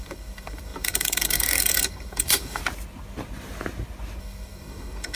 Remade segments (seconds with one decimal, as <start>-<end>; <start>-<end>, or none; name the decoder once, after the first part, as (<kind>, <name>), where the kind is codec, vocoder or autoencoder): 0.0-2.6 (codec, DAC); 4.2-5.2